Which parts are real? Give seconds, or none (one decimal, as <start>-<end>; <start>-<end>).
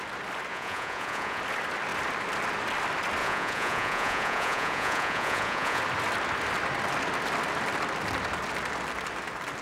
0.0-0.5; 1.4-3.2; 5.8-9.6